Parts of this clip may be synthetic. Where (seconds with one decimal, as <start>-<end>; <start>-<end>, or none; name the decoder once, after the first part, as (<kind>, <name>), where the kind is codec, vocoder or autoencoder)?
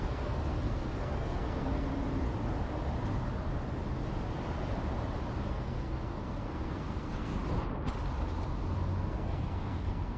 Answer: 0.0-1.9 (codec, SNAC); 5.5-7.3; 9.0-10.2